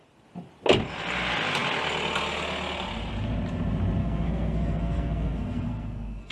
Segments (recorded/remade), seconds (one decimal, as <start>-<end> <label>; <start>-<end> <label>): 0.0-4.0 recorded; 4.0-6.3 remade